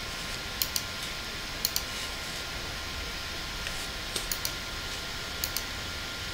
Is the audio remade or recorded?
recorded